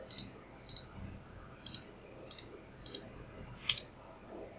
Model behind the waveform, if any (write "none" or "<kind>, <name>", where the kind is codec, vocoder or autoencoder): none